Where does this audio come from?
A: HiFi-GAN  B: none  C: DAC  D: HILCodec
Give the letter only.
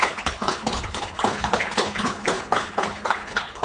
D